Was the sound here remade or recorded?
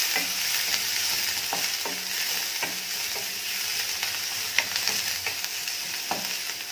recorded